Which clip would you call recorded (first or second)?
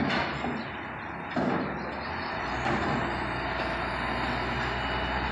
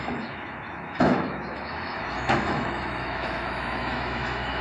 first